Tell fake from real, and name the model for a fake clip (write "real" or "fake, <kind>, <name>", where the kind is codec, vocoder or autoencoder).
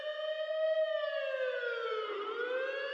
real